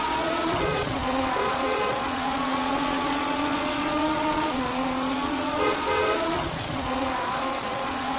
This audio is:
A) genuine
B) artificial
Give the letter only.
B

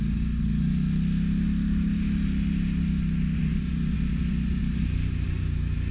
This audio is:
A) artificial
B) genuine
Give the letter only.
B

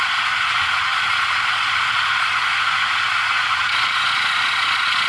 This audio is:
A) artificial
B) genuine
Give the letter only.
A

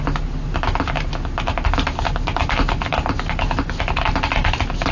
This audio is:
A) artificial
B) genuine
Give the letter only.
B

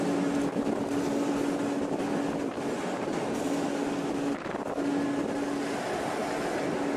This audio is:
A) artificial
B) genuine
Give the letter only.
B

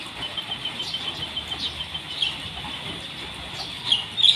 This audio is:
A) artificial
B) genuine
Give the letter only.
B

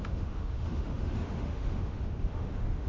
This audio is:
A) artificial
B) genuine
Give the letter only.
A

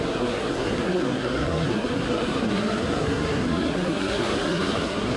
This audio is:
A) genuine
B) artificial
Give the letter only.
B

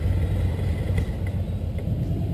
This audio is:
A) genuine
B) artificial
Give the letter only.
A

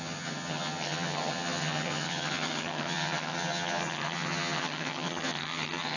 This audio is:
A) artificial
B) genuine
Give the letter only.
A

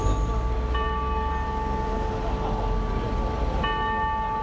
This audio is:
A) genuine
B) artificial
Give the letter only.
A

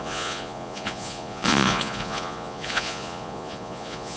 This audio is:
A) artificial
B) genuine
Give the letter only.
A